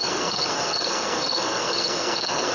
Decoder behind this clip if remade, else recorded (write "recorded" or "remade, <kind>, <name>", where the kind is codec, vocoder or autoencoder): remade, codec, SNAC